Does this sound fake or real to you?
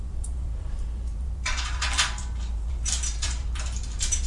fake